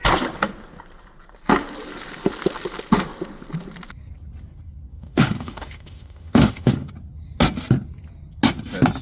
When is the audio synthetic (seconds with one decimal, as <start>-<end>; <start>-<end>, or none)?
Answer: 4.9-6.9